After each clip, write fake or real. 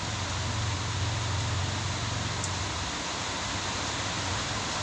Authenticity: real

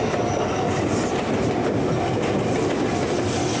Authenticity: real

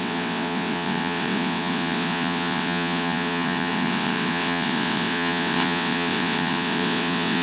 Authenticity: fake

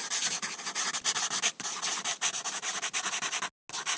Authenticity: real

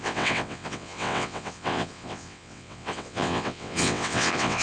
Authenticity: fake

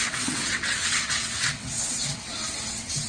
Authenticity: fake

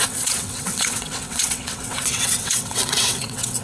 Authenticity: fake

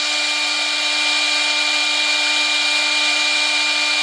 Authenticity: real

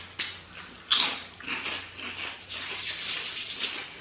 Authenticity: real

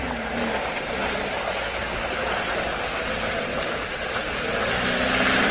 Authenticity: real